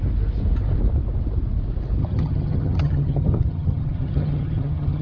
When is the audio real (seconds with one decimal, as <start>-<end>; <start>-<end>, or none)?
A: 0.0-2.0